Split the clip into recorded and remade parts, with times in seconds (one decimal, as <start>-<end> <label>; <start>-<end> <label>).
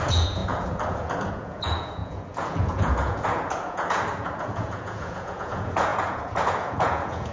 0.0-7.3 remade